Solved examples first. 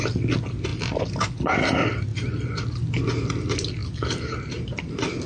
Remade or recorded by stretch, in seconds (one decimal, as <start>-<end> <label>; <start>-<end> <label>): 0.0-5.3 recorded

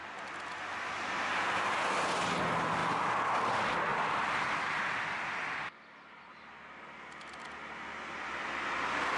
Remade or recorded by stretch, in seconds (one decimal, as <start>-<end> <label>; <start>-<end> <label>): 0.0-9.2 recorded

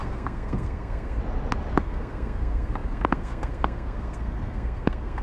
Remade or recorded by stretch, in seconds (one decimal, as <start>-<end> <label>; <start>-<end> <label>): 0.0-1.2 remade; 1.2-1.8 recorded; 1.8-5.2 remade

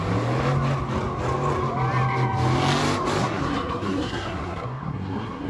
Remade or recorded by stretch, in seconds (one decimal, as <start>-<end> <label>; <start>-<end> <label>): 0.0-3.2 recorded; 3.2-5.5 remade

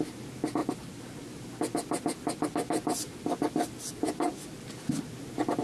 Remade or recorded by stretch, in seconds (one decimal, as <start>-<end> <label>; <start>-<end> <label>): 0.0-5.6 recorded

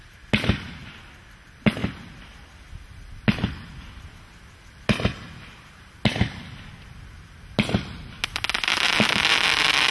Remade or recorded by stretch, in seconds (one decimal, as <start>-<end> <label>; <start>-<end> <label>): 0.0-9.9 recorded